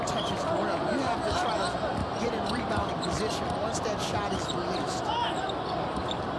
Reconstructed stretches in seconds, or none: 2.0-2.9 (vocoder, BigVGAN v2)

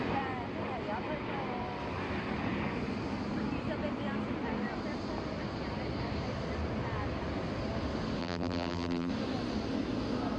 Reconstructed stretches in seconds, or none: 8.2-9.1 (vocoder, BigVGAN v2)

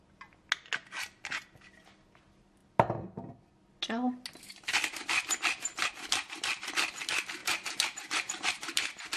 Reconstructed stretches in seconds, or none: 7.4-9.2 (vocoder, BigVGAN v2)

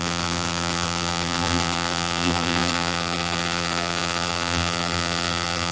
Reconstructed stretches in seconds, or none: 0.0-5.7 (vocoder, BigVGAN v2)